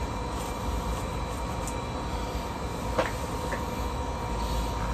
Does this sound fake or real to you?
real